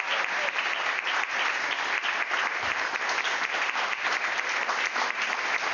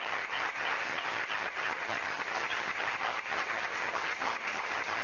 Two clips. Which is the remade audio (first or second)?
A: second